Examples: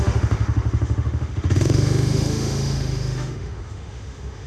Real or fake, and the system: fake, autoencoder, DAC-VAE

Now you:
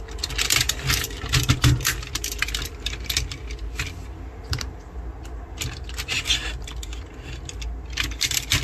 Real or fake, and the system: real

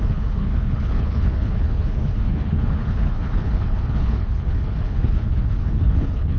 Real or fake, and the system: fake, codec, HILCodec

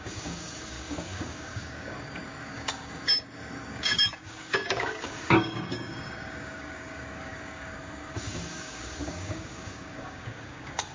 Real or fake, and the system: fake, codec, DAC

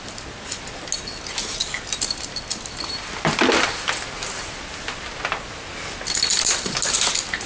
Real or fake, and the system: real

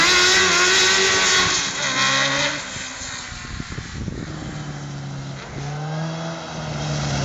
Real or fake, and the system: real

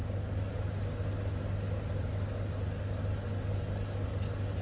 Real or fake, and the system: real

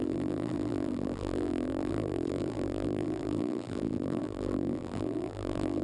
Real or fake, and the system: fake, vocoder, BigVGAN v2